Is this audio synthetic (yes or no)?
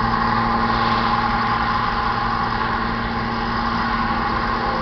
no